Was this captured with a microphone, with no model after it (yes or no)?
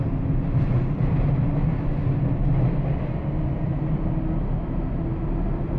yes